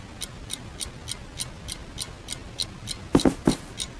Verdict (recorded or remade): recorded